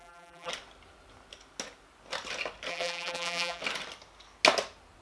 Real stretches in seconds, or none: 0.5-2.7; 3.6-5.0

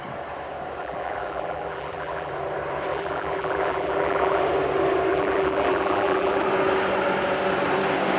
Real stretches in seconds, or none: 0.0-0.8; 2.3-2.9; 4.4-5.1; 6.4-8.2

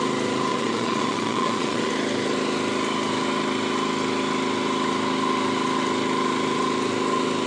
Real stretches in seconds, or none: 0.0-0.5; 1.9-7.5

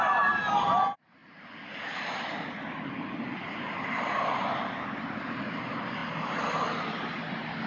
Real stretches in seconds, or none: 0.0-7.7

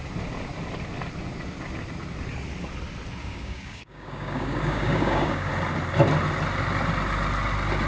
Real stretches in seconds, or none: 0.0-3.2; 5.5-7.9

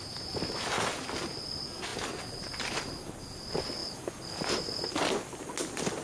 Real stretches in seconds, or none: 0.0-6.0

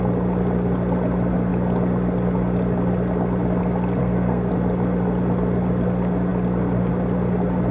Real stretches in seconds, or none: 0.0-4.0; 4.5-7.7

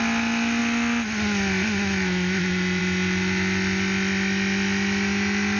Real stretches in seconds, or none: 0.0-5.6